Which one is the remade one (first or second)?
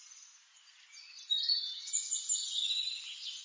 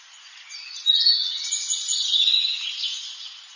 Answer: second